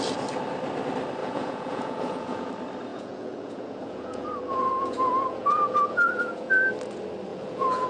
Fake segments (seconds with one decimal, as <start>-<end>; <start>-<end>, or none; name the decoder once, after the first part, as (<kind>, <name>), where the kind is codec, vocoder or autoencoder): 1.2-2.5 (vocoder, Vocos); 2.9-6.5; 7.3-7.9